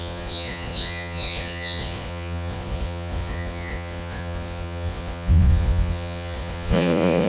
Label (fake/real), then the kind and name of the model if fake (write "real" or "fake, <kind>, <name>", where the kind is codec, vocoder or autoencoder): fake, vocoder, Vocos